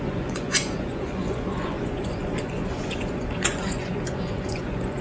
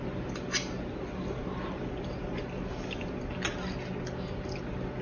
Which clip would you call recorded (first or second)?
second